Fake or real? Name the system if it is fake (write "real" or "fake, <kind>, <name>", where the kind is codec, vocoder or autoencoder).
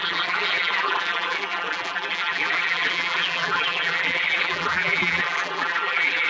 fake, vocoder, BigVGAN v2